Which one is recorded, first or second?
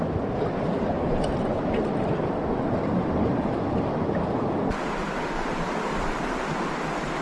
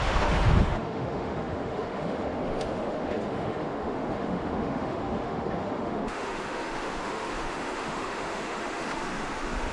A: first